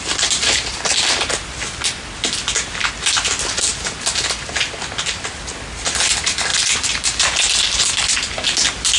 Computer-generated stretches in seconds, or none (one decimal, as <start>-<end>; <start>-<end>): none